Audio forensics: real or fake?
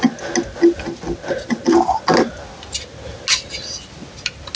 real